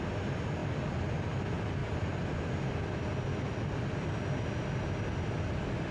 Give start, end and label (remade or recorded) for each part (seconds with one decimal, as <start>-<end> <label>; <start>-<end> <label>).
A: 0.0-5.9 recorded